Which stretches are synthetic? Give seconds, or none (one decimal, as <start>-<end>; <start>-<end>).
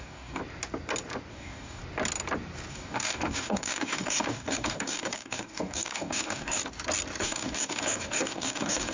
0.0-0.4; 1.3-1.8; 2.7-6.6; 7.2-8.9